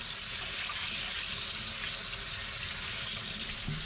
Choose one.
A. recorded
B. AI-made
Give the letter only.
A